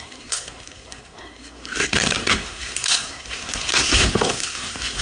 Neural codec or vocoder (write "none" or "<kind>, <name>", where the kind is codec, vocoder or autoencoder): codec, SNAC